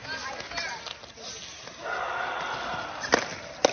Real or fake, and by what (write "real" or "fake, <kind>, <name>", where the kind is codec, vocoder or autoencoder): real